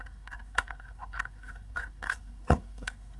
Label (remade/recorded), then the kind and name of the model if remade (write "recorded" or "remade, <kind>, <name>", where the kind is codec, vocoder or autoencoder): remade, codec, SNAC